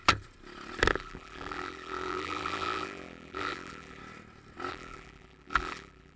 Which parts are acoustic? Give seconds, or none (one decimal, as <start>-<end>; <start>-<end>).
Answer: 0.0-0.9; 4.0-4.7